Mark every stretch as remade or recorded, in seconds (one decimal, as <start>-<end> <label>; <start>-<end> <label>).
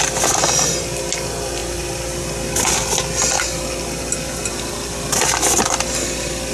0.0-6.5 recorded